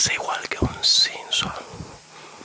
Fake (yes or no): no